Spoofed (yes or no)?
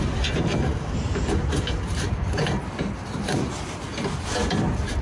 no